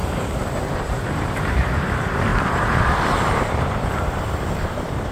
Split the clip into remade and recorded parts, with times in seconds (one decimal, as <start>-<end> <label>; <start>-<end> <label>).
0.0-0.7 recorded; 0.7-5.1 remade